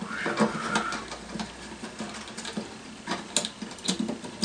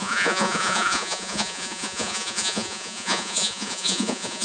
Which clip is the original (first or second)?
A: first